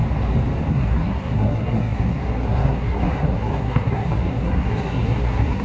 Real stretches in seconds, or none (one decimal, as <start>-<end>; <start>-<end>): 0.0-0.7